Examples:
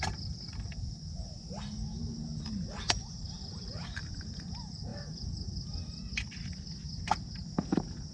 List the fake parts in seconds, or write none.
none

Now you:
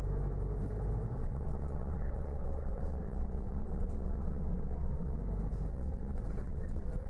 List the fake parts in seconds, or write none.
1.2-5.2 (vocoder, WaveNeXt); 5.7-7.1

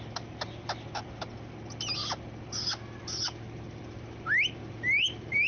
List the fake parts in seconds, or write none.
none

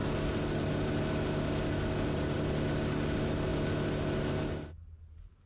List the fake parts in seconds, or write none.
none